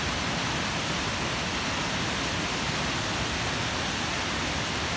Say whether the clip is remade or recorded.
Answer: recorded